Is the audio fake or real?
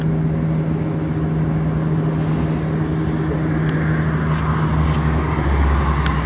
real